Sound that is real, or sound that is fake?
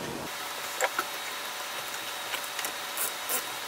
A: real